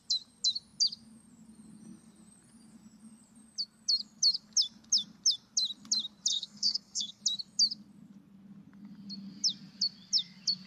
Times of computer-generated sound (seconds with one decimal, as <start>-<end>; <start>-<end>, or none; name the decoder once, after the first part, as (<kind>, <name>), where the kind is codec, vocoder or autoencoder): 6.3-7.2 (codec, SNAC)